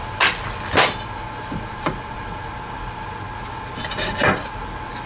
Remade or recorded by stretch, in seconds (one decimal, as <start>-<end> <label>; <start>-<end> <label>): 0.0-5.1 recorded